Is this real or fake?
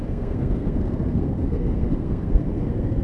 fake